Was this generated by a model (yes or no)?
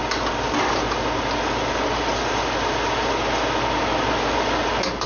no